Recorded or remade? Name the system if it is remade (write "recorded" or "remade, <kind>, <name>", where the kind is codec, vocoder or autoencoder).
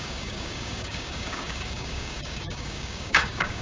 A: remade, codec, DAC